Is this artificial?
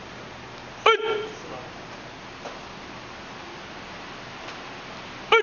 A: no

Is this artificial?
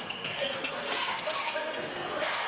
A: yes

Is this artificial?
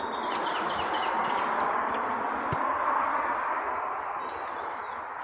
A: no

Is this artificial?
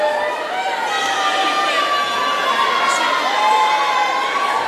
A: no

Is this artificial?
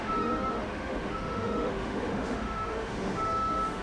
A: yes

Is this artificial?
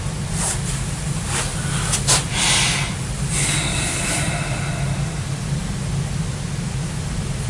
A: no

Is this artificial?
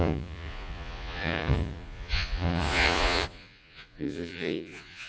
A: yes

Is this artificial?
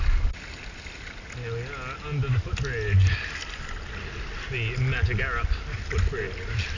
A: no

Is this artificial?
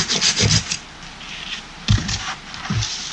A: yes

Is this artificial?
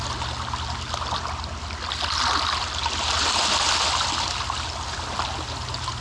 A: no